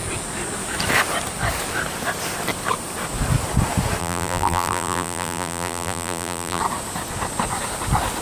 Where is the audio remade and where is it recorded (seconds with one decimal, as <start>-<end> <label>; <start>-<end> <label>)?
0.0-4.0 recorded; 4.0-6.6 remade; 6.6-8.2 recorded